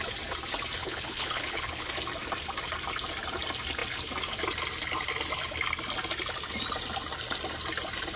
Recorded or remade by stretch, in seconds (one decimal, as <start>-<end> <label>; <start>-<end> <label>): 0.0-0.8 recorded; 0.8-1.9 remade; 1.9-8.2 recorded